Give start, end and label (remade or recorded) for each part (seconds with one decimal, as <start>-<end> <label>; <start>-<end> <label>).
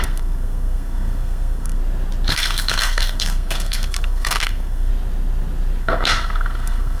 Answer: 0.0-1.8 remade; 1.8-2.3 recorded; 2.3-4.9 remade; 4.9-5.8 recorded; 5.8-7.0 remade